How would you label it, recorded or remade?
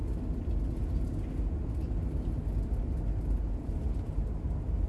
recorded